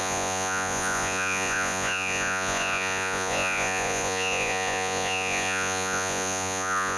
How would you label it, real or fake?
fake